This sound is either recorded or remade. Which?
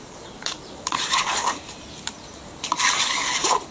remade